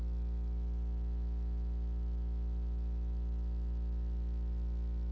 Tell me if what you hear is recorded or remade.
recorded